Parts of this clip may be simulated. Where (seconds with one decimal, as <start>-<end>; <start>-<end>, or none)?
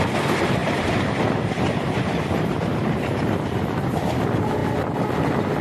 0.6-3.6